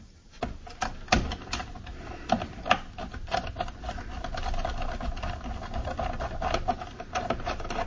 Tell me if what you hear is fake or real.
real